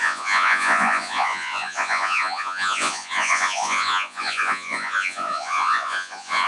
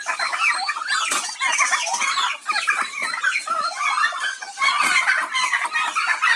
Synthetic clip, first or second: first